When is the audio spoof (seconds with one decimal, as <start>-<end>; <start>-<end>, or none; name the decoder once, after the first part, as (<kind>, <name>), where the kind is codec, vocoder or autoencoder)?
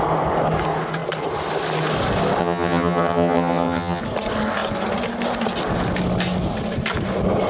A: 2.4-4.0 (vocoder, HiFi-GAN)